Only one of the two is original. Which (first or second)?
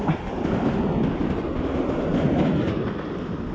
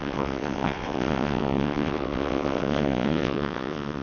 first